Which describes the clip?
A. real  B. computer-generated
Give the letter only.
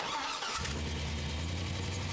A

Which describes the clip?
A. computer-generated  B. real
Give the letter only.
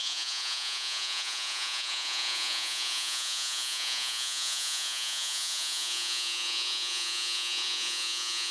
A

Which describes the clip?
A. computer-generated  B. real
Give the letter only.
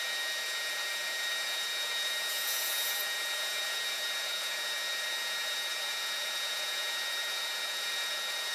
A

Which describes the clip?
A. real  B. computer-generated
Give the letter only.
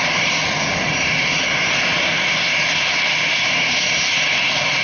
A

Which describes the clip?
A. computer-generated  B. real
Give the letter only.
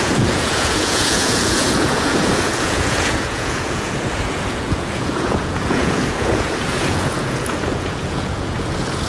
A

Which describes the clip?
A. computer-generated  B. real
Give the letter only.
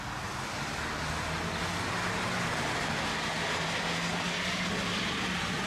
B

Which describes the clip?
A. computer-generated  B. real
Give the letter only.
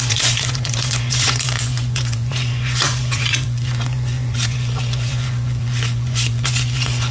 A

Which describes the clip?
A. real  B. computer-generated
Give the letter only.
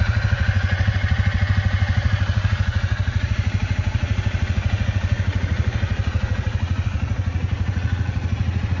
B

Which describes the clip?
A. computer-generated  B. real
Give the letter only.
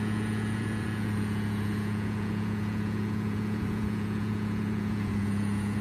A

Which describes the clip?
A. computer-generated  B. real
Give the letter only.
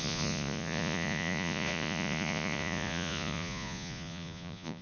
A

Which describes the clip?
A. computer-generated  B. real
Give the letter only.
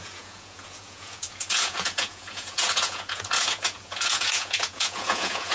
A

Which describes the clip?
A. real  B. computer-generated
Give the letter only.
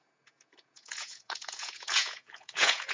B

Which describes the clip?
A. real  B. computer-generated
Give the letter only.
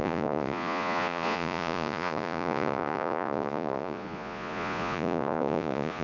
B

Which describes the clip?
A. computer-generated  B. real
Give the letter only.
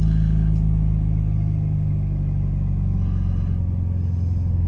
B